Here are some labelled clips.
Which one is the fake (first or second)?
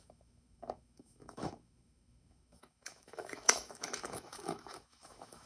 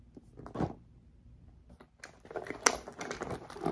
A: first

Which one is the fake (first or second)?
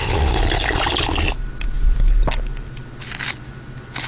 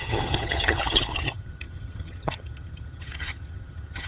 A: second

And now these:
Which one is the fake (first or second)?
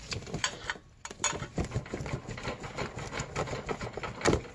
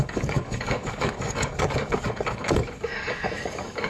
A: second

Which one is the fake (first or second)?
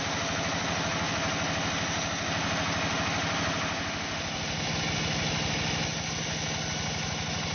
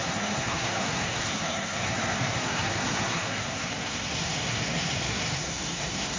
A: second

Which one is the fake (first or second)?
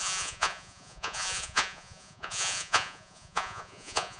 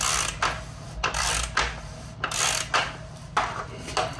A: first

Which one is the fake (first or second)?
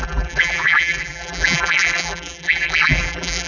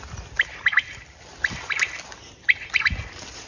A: first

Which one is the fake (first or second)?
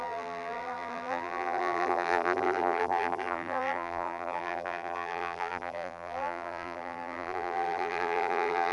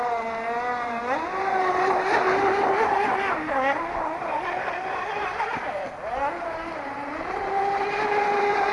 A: first